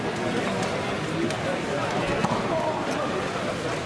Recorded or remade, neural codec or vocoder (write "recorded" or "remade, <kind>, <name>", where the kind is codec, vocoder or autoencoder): recorded